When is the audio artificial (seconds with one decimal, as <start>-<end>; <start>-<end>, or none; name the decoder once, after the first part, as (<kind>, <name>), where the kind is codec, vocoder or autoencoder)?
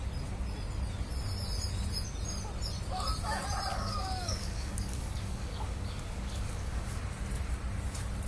3.7-7.0 (codec, DAC)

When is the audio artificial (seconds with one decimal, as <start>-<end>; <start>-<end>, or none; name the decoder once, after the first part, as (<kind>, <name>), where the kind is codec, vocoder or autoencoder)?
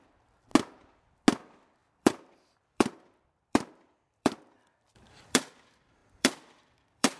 1.8-5.5 (vocoder, BigVGAN v2); 6.0-7.2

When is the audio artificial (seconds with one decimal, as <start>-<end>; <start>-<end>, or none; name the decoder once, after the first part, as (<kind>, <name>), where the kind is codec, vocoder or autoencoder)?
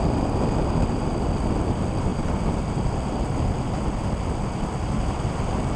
none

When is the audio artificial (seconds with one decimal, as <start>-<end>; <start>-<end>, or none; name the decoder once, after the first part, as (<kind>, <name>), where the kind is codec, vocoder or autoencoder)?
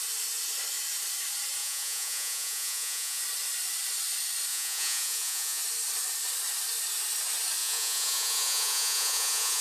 1.6-3.2 (vocoder, Vocos); 4.5-5.6; 7.6-9.6